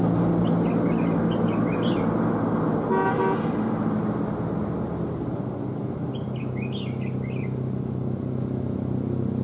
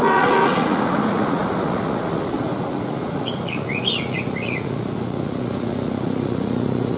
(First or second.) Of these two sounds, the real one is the first